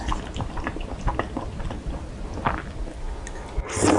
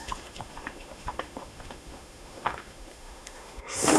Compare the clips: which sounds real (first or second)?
first